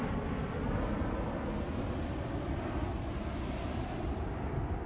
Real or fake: real